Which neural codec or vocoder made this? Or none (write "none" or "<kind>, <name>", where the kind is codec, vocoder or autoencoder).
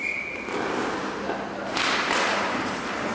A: none